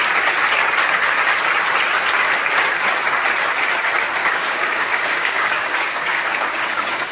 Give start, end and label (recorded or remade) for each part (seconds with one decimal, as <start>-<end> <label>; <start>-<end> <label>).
0.0-4.2 recorded; 4.2-7.1 remade